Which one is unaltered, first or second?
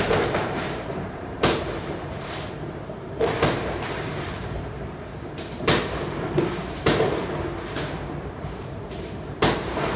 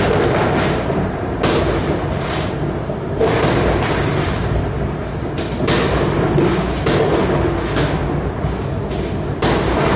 second